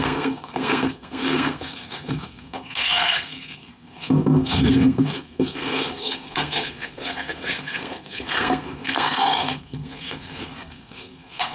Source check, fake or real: fake